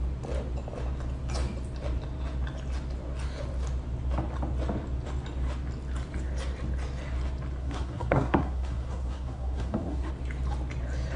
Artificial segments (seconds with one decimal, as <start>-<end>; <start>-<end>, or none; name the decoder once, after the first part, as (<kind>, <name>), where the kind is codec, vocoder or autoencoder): 7.6-10.1 (codec, SNAC)